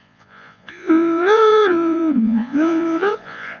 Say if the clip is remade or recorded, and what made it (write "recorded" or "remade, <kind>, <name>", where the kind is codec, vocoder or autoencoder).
remade, vocoder, Vocos